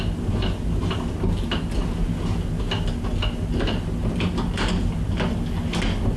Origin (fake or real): real